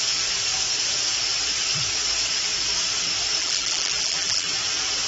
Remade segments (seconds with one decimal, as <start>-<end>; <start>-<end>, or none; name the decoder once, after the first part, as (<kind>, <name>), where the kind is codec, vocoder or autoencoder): 3.4-4.5 (vocoder, BigVGAN v2)